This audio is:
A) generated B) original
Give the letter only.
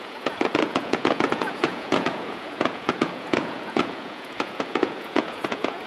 A